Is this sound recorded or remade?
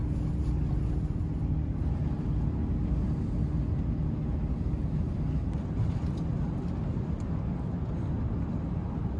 recorded